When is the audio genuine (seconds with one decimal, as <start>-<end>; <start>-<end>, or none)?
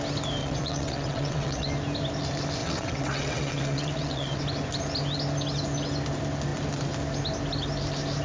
0.0-0.4; 1.7-2.6; 4.4-8.2